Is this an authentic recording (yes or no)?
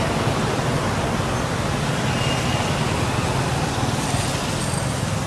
yes